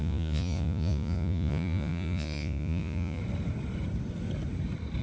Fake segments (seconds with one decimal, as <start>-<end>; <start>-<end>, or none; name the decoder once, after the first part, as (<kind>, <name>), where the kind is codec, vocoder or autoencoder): 0.0-3.2 (vocoder, Vocos)